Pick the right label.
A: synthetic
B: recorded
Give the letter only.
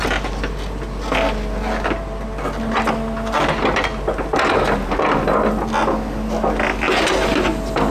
B